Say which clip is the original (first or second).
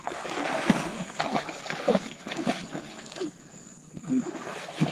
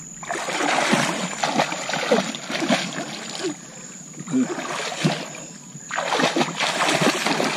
second